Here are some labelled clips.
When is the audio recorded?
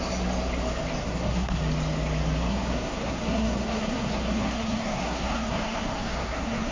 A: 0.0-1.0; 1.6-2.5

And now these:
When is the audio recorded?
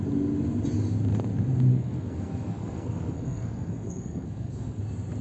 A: 0.0-1.7; 4.8-5.2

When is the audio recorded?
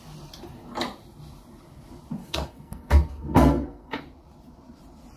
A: 0.0-2.2; 4.0-5.2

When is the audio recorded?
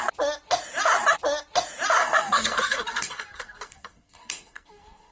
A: 0.0-2.0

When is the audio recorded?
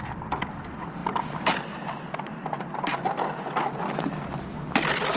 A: 0.0-5.2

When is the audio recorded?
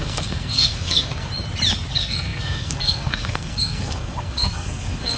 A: 1.3-1.9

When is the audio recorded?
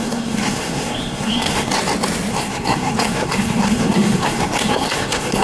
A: 1.7-2.3